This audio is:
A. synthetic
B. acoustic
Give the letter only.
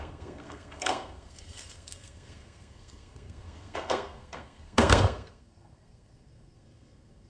A